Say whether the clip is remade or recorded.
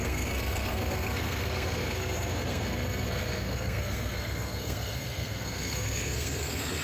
remade